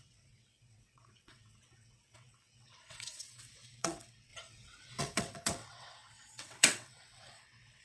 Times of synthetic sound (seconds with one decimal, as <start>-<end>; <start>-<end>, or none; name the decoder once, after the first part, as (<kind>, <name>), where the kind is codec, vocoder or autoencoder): 0.0-7.8 (vocoder, WaveNeXt)